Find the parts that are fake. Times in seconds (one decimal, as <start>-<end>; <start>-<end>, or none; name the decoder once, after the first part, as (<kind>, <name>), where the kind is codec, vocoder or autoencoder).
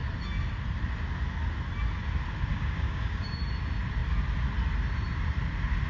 2.5-3.3 (codec, DAC)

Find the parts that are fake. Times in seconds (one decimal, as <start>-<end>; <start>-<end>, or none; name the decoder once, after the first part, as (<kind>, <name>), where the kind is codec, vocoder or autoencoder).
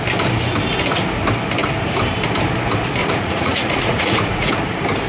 3.0-4.5 (vocoder, Vocos)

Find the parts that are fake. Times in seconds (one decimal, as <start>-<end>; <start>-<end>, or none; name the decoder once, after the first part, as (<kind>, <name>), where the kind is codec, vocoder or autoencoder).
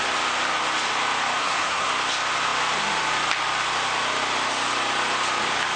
1.4-1.9 (codec, SNAC)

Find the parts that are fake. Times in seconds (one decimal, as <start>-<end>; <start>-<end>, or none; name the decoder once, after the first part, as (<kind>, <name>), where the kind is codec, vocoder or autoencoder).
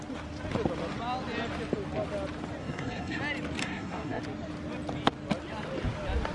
2.6-3.2 (codec, SNAC); 3.6-4.2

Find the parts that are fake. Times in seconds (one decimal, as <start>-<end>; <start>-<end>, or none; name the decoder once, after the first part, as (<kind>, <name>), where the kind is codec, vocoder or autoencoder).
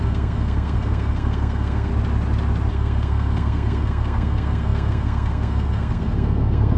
0.0-1.9 (codec, SNAC); 2.7-6.8